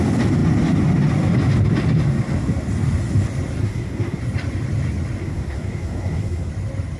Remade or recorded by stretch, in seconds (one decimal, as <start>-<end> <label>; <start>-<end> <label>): 0.0-3.6 recorded; 3.6-4.2 remade; 4.2-5.2 recorded; 5.2-6.5 remade; 6.5-7.0 recorded